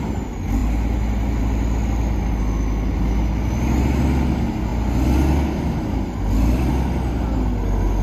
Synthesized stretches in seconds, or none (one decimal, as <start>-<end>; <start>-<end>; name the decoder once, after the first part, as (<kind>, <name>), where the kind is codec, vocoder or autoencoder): none